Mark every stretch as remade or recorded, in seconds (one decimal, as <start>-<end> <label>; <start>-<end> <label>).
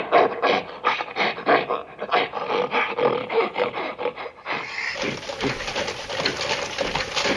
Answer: 0.0-3.2 recorded; 3.2-3.7 remade; 3.7-7.4 recorded